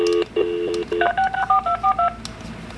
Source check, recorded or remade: recorded